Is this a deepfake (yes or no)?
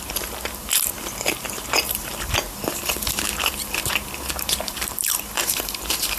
yes